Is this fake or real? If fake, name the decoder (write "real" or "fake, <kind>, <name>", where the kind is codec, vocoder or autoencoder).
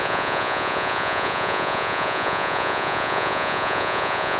fake, vocoder, Vocos